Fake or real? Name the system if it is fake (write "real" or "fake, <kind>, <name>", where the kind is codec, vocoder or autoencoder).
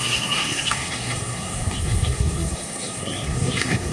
fake, codec, SNAC